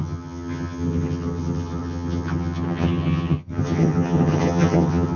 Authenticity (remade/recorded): remade